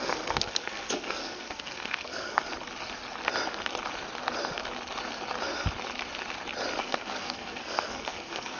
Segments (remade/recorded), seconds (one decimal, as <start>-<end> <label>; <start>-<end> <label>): 0.0-2.4 remade; 2.4-6.8 recorded; 6.8-8.6 remade